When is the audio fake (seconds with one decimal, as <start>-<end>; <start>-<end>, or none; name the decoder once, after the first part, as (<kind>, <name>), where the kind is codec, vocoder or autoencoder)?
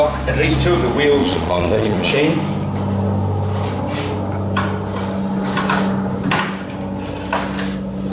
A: 1.2-2.1 (vocoder, Vocos)